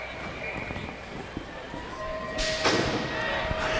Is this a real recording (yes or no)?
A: yes